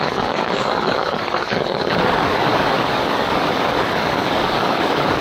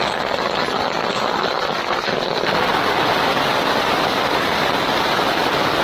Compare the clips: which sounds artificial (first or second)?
first